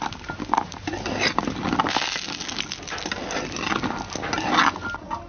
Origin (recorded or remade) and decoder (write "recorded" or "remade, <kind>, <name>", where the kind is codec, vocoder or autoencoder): recorded